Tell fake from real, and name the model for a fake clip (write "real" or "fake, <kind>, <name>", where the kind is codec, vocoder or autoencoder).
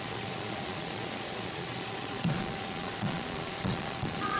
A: fake, vocoder, Vocos